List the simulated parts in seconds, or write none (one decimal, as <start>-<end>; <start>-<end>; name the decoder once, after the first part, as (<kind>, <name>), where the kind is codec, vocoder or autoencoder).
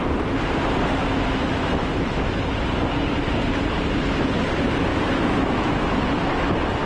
1.1-2.4 (autoencoder, DAC-VAE); 4.9-6.0